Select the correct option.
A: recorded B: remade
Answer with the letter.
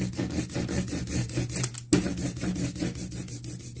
A